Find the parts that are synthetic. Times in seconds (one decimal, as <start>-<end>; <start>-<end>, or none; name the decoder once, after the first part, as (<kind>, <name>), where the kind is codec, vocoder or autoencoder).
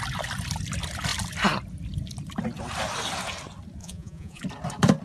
3.8-4.4 (vocoder, Vocos)